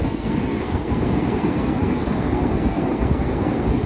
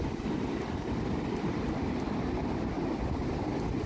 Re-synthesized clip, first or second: first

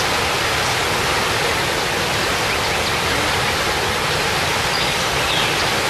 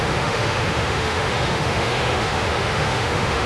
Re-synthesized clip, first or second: second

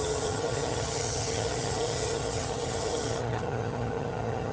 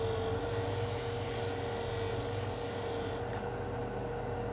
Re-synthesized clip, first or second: first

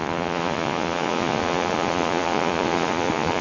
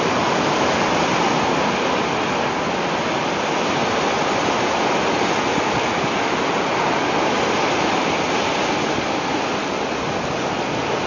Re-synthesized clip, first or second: first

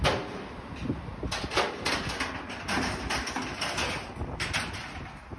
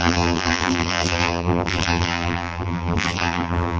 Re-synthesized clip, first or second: second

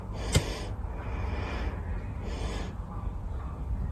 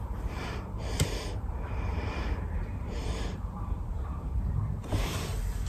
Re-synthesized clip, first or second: second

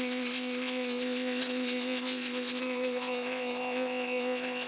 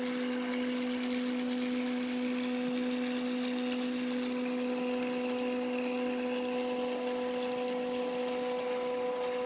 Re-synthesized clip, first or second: first